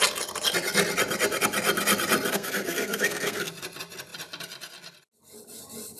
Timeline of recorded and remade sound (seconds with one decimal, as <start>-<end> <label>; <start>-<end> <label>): 0.0-2.3 recorded; 2.3-3.5 remade; 3.5-6.0 recorded